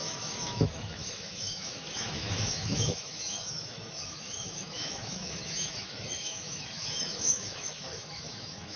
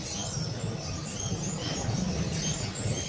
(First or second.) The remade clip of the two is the first